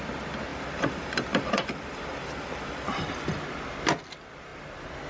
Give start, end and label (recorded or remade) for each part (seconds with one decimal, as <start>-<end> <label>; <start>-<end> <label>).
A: 0.0-0.5 recorded; 0.5-3.4 remade; 3.4-5.1 recorded